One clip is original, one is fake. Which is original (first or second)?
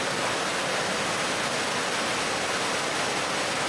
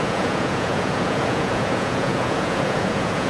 first